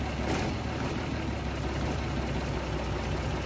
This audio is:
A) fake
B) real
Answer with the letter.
B